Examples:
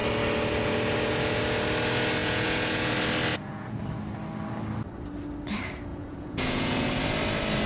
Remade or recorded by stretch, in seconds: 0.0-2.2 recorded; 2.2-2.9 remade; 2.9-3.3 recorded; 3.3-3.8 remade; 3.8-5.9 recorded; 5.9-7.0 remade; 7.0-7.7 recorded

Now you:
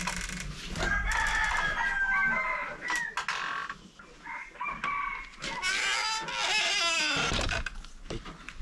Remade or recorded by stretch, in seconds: 0.0-8.6 recorded

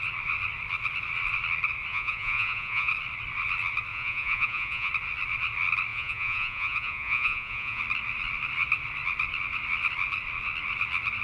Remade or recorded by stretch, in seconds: 0.0-1.9 recorded; 1.9-2.9 remade; 2.9-3.9 recorded; 3.9-4.9 remade; 4.9-5.9 recorded; 5.9-7.8 remade; 7.8-11.2 recorded

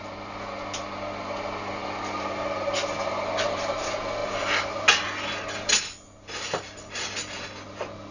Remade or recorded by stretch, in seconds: 0.0-8.1 recorded

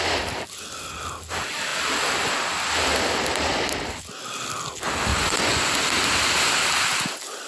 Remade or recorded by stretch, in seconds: 0.0-5.1 recorded; 5.1-5.8 remade; 5.8-7.5 recorded